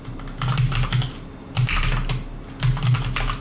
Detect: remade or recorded recorded